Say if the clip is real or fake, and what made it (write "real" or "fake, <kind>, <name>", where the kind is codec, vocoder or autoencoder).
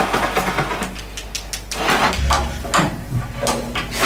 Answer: real